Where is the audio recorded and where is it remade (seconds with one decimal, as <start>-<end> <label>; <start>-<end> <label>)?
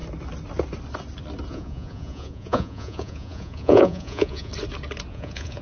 0.0-1.5 recorded; 1.5-4.5 remade; 4.5-5.1 recorded; 5.1-5.6 remade